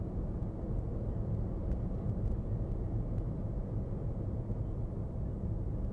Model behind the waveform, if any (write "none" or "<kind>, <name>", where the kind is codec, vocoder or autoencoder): none